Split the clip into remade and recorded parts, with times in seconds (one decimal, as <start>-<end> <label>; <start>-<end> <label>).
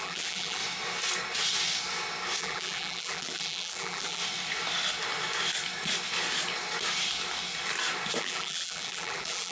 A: 0.0-0.6 remade; 0.6-2.4 recorded; 2.4-4.2 remade; 4.2-8.2 recorded; 8.2-9.5 remade